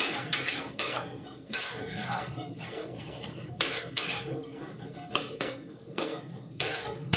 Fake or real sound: fake